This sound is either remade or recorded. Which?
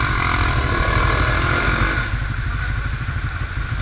recorded